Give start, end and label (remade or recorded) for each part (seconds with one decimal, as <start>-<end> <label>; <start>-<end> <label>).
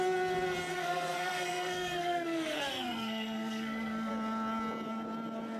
0.0-0.7 recorded; 0.7-4.1 remade; 4.1-5.6 recorded